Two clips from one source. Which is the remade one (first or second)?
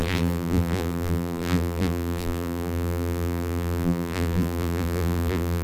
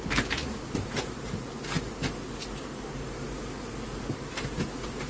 first